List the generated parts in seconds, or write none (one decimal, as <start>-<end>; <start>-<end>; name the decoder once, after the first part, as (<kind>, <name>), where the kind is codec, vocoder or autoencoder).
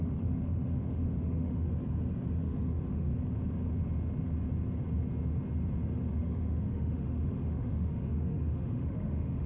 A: 0.0-1.7 (autoencoder, DAC-VAE); 2.4-3.1; 6.1-9.5